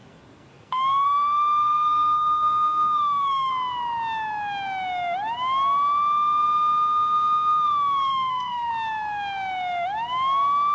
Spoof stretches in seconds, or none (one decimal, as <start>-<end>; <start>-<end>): 0.0-3.5; 8.1-8.7